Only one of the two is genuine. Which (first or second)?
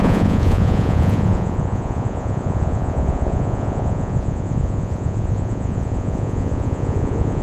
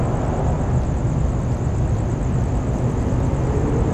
second